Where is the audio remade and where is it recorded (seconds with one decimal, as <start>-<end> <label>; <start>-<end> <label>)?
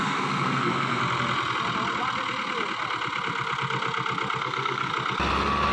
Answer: 0.0-1.0 remade; 1.0-4.4 recorded; 4.4-4.9 remade; 4.9-5.7 recorded